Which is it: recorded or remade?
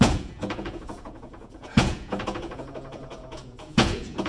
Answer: remade